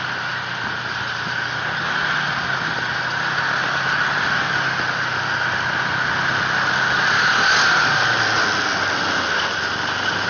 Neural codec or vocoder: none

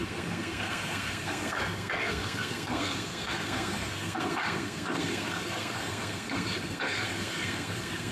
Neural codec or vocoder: codec, SNAC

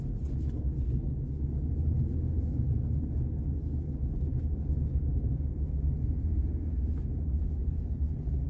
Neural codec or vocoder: none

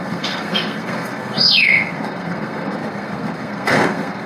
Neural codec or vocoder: codec, SNAC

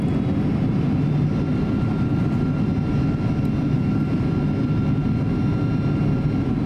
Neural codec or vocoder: none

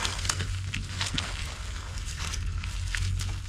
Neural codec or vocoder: codec, SNAC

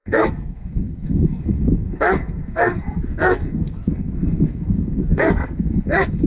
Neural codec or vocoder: codec, SNAC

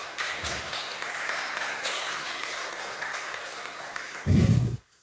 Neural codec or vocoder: codec, SNAC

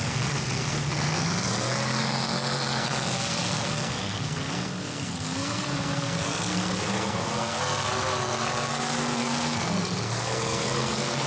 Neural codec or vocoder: codec, SNAC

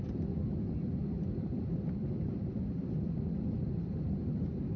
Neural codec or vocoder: none